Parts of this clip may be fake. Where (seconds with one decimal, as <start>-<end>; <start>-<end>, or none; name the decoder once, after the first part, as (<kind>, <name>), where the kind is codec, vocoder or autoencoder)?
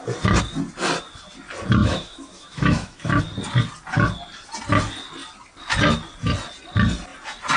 1.8-3.2 (autoencoder, DAC-VAE)